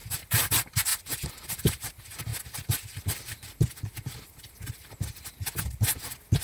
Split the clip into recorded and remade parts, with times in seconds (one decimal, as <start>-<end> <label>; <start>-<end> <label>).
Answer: 0.0-0.5 remade; 0.5-0.9 recorded; 0.9-1.9 remade; 1.9-6.4 recorded